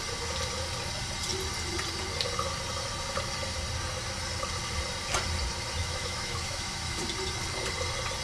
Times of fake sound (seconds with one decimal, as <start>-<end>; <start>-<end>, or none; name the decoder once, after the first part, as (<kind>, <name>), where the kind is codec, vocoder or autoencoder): 5.8-7.0 (autoencoder, DAC-VAE)